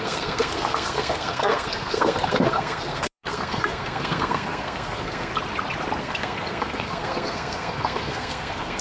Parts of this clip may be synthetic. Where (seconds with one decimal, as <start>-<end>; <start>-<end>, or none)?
0.0-5.3; 6.0-8.8